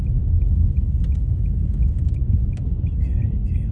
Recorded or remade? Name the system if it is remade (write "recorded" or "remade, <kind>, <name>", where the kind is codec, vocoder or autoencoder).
recorded